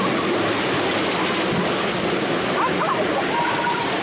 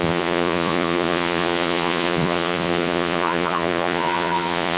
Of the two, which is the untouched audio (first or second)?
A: first